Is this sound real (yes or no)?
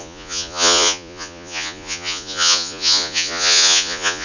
no